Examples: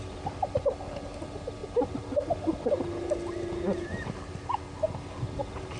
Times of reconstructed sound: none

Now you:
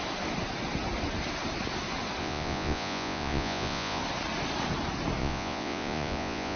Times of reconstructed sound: 2.2-4.0 (vocoder, Vocos); 5.2-6.6